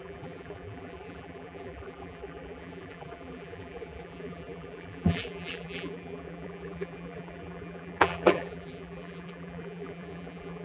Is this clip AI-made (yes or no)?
yes